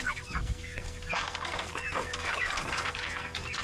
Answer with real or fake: fake